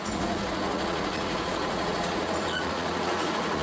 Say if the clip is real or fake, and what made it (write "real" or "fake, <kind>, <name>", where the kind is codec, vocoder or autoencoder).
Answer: fake, vocoder, Vocos